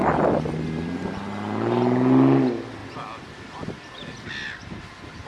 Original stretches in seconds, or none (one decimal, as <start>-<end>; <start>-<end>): 0.0-5.3